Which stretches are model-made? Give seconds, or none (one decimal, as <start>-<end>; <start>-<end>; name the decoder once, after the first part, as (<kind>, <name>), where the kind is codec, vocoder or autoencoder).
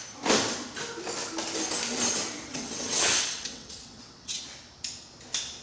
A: 2.5-4.4 (vocoder, WaveNeXt)